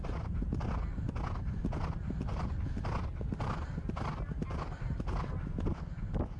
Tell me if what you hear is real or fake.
real